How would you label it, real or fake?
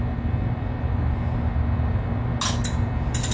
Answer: real